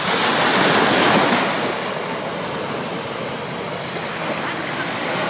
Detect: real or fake real